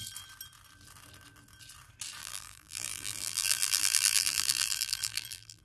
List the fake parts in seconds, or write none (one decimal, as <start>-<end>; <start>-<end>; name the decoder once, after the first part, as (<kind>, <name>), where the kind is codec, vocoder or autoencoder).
2.2-5.6 (vocoder, BigVGAN v2)